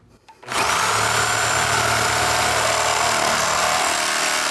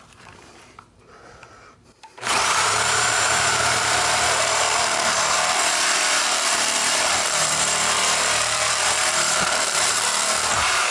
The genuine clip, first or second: first